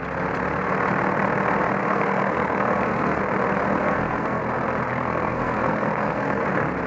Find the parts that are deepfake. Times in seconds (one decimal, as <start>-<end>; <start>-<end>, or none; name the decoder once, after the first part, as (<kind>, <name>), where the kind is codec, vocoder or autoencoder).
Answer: 1.8-3.2 (codec, SNAC); 3.8-4.4; 4.9-6.5